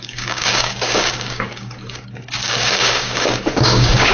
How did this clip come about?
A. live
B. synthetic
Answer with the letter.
B